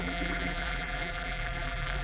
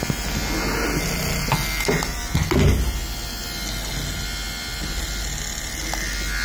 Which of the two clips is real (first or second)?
second